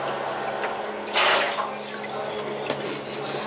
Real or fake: real